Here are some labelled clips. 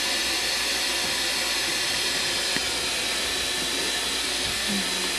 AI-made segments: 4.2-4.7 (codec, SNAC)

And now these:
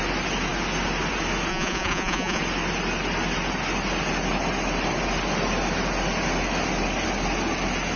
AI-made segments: 1.5-2.4 (vocoder, Vocos)

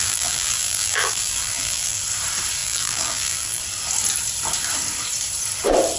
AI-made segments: 0.0-2.0 (vocoder, BigVGAN v2); 2.6-3.6

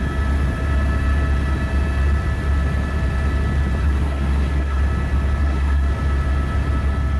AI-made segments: 3.8-4.8 (codec, SNAC); 5.4-5.9

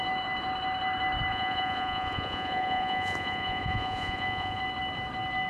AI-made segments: 1.3-4.6 (vocoder, Vocos)